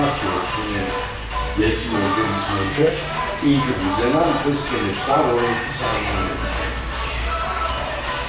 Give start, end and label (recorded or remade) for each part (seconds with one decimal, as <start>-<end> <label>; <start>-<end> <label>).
0.0-1.5 recorded; 1.5-2.9 remade; 2.9-7.2 recorded; 7.2-7.7 remade; 7.7-8.3 recorded